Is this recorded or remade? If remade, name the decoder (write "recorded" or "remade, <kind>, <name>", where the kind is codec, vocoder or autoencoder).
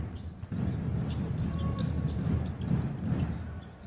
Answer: recorded